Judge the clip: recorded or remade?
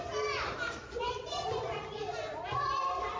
recorded